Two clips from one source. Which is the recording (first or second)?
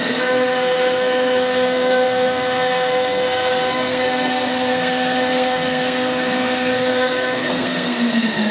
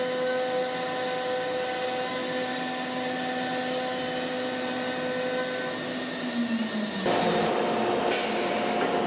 second